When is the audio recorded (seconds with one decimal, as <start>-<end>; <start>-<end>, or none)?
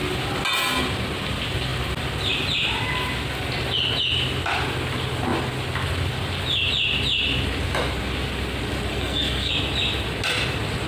0.0-8.9; 9.5-10.9